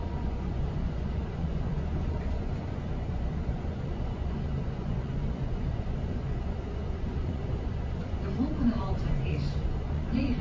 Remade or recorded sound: remade